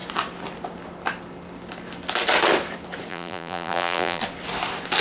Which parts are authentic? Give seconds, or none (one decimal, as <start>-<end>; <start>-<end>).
0.0-3.1; 4.2-5.0